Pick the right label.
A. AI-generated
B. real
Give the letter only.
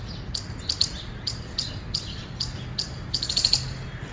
B